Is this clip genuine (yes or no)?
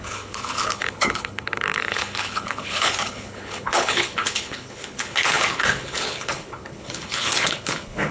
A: no